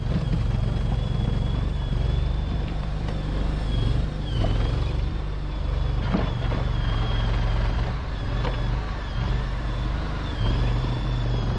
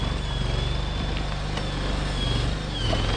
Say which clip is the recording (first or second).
second